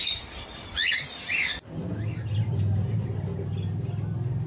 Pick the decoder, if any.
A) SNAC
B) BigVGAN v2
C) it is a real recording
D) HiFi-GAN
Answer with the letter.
C